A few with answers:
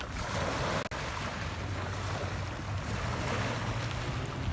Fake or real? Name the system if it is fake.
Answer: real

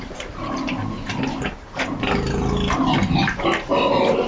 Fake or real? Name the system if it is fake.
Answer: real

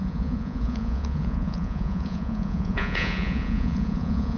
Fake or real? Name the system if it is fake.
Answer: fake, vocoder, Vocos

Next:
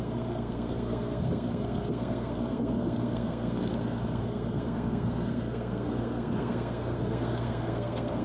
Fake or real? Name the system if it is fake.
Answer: fake, codec, SNAC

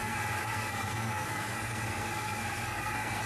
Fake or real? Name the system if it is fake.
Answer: fake, codec, SNAC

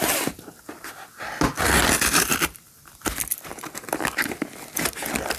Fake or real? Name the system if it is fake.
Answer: real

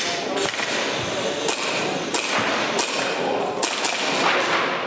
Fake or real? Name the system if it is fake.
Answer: real